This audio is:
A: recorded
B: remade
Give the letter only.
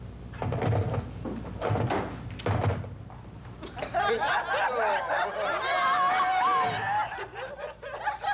A